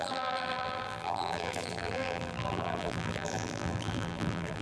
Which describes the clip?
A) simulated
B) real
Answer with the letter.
A